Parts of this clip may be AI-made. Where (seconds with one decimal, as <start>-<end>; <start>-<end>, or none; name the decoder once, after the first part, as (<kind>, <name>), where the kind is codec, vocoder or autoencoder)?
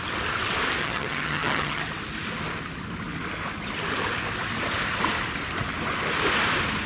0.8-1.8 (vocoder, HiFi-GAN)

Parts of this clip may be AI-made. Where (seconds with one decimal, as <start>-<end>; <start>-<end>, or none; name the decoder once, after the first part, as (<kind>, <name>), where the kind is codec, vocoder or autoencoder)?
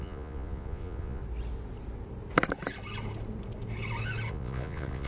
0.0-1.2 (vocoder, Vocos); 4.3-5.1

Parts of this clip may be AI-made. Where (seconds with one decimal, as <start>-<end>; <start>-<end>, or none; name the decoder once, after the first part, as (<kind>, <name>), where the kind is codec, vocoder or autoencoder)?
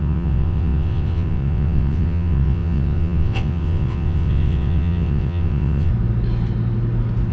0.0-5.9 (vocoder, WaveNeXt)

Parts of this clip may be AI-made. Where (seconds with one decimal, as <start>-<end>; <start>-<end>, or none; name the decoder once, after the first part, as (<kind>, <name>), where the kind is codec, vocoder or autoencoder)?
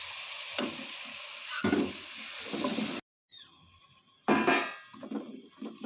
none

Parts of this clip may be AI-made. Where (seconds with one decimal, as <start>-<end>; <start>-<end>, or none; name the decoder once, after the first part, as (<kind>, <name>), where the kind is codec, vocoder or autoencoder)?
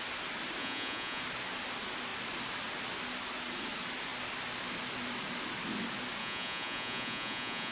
0.6-1.2 (vocoder, Vocos); 6.2-7.7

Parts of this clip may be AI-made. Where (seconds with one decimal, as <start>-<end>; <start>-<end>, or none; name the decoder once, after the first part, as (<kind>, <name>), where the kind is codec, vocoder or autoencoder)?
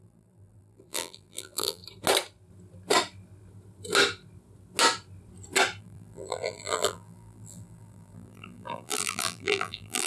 0.0-1.8 (vocoder, BigVGAN v2); 5.8-10.1